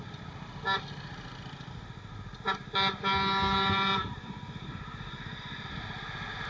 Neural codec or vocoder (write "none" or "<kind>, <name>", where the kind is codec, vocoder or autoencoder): none